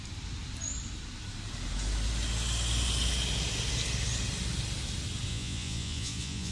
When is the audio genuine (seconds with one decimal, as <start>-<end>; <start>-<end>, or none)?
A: 0.0-5.3